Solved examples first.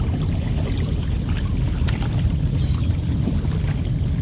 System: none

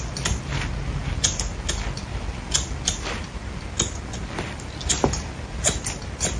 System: none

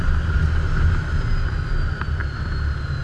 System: none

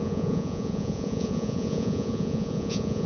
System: vocoder, Vocos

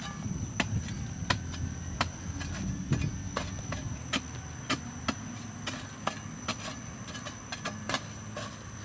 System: none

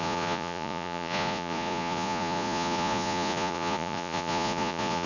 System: vocoder, Vocos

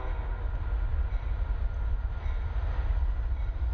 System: none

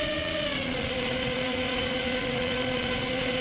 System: vocoder, Vocos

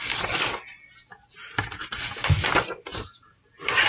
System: none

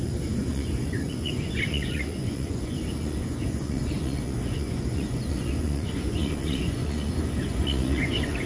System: vocoder, Vocos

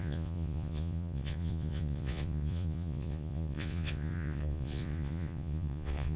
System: vocoder, Vocos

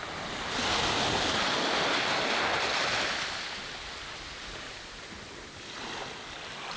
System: none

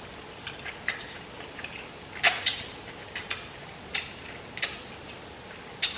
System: none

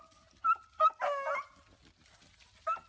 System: none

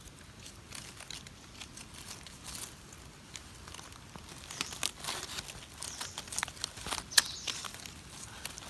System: none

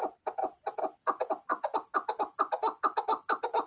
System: none